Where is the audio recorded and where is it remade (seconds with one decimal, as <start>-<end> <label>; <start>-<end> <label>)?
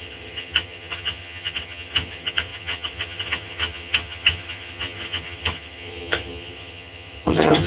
0.0-7.7 remade